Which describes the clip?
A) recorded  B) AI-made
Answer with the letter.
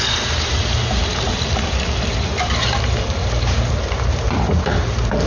B